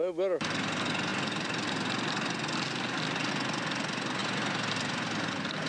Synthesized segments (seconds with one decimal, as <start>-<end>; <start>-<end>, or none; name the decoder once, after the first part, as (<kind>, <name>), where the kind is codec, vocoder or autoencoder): 1.1-3.3 (vocoder, BigVGAN v2)